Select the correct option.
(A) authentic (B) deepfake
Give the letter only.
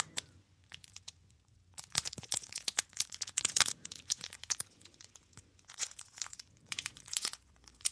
B